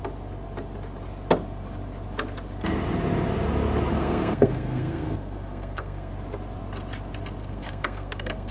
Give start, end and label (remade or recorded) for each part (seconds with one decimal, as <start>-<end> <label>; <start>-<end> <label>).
0.0-3.9 recorded; 3.9-6.1 remade; 6.1-7.4 recorded; 7.4-8.5 remade